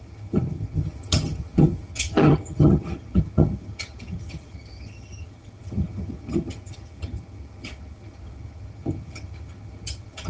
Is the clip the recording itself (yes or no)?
no